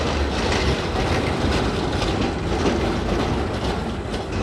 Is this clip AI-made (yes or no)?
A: no